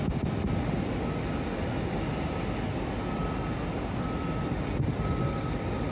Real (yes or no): yes